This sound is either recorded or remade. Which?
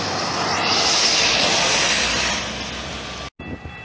recorded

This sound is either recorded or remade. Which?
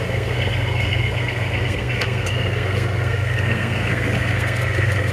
remade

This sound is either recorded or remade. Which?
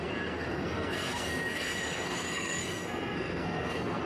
remade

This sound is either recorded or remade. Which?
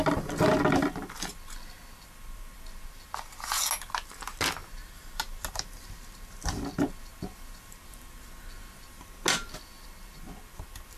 recorded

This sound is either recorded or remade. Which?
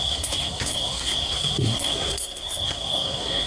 remade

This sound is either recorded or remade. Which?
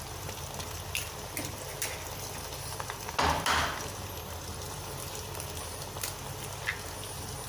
recorded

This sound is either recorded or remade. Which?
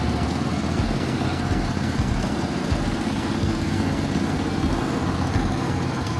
remade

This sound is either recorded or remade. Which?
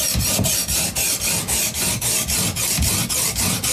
recorded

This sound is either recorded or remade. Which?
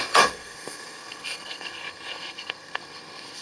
remade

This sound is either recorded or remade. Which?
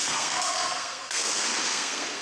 remade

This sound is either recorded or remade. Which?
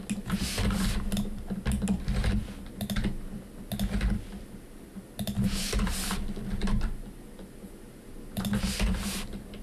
recorded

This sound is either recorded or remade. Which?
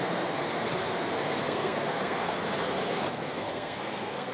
remade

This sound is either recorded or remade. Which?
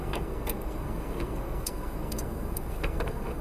remade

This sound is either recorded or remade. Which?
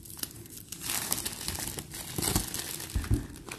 recorded